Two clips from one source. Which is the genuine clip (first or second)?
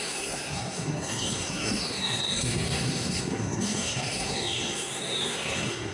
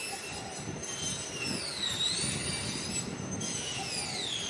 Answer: second